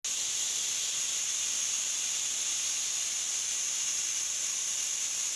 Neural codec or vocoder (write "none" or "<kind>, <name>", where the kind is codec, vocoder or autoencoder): none